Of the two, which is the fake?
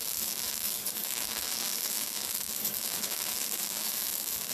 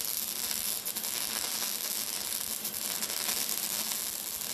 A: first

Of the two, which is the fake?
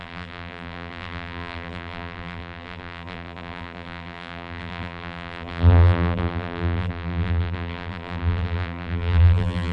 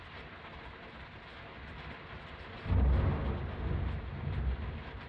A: first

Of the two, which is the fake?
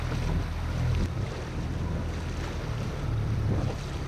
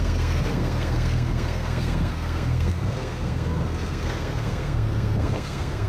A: second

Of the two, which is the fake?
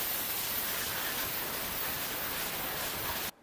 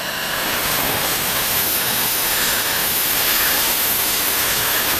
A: second